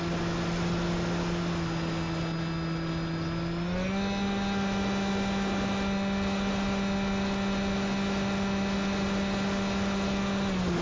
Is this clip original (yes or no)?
yes